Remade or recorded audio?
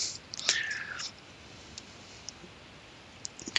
recorded